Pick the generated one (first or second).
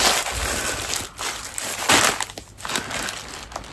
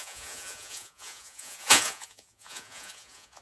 second